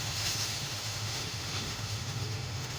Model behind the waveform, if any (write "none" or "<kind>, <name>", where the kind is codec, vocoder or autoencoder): autoencoder, DAC-VAE